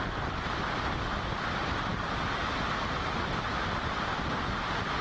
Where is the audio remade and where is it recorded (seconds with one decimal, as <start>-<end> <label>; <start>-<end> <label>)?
0.0-5.0 recorded